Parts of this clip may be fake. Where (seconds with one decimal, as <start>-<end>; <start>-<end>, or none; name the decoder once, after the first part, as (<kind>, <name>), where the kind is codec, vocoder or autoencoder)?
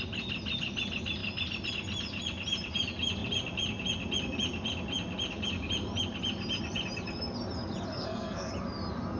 7.9-8.5 (codec, SNAC)